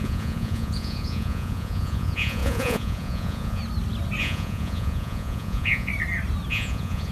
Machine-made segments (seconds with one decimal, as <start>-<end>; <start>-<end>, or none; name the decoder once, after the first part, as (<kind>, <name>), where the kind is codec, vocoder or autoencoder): 0.0-3.6 (vocoder, Vocos); 4.2-5.9; 6.5-7.1